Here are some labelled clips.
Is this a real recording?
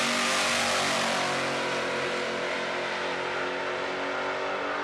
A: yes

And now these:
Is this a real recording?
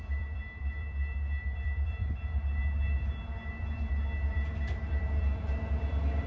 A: no